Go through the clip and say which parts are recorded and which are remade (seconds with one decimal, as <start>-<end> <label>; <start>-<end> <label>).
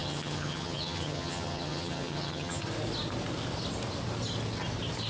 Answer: 0.0-2.6 remade; 2.6-5.1 recorded